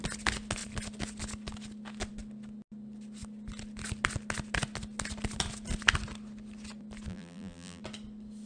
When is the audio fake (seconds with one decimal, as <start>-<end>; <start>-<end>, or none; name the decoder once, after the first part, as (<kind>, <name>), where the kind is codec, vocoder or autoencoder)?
7.1-7.8 (vocoder, BigVGAN v2)